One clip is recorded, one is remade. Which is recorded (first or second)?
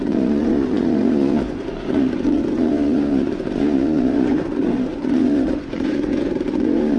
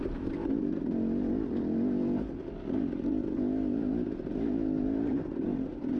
second